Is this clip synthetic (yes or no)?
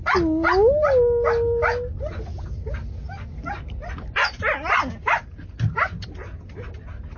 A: no